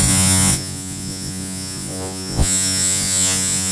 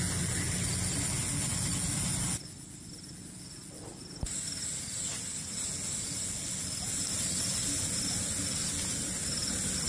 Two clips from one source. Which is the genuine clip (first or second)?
second